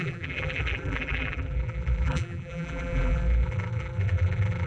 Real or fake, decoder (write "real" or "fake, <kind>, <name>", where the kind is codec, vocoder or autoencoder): fake, vocoder, BigVGAN v2